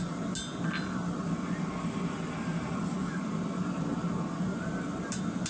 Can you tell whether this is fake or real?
real